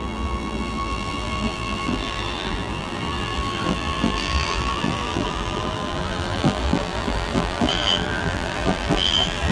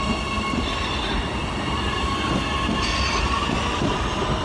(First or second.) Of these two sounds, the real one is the second